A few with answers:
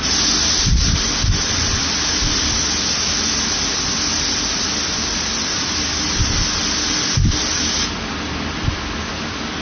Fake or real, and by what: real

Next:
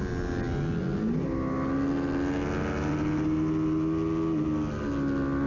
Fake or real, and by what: real